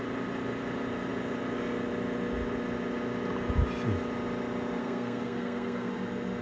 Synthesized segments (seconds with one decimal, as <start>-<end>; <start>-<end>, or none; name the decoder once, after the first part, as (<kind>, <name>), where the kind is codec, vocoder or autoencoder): 4.8-5.9 (codec, SNAC)